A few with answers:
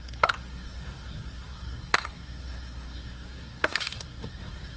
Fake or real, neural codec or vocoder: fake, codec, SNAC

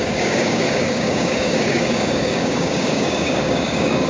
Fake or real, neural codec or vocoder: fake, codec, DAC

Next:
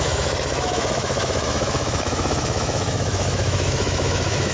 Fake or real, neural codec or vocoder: fake, autoencoder, DAC-VAE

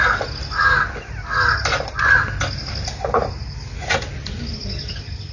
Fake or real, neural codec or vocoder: real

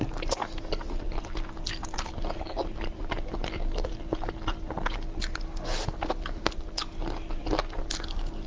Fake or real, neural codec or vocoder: real